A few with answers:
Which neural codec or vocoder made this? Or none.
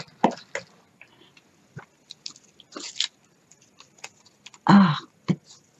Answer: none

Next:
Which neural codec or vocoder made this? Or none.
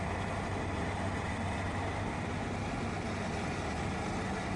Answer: none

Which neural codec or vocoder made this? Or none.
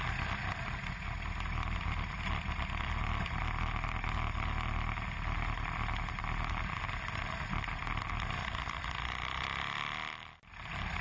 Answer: none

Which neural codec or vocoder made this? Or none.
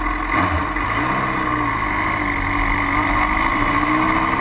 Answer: none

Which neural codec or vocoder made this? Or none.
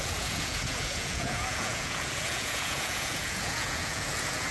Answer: vocoder, Vocos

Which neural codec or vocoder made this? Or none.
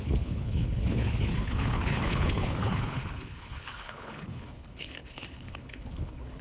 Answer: codec, HILCodec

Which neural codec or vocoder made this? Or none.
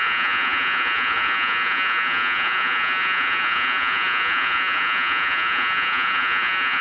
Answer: vocoder, Vocos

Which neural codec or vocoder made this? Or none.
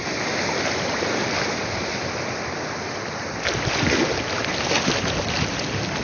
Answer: none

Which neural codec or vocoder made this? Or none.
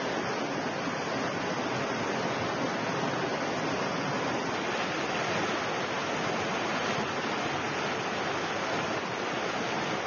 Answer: none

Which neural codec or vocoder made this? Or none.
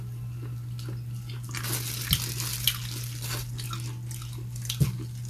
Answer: none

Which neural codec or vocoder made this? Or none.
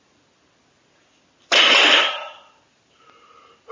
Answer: none